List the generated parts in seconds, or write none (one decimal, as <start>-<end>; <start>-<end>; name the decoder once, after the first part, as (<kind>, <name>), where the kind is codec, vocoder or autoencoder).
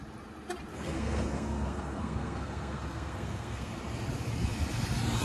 0.7-3.8 (codec, SNAC)